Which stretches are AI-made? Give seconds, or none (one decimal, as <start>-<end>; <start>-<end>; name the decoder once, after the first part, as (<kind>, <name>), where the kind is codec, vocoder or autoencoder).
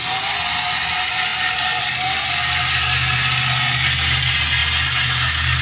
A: none